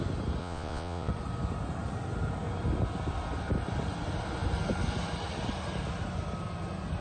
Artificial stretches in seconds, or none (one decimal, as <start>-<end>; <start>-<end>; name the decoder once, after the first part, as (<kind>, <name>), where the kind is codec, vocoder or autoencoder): 0.4-1.1 (vocoder, Vocos)